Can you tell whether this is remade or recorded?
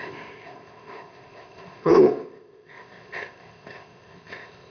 remade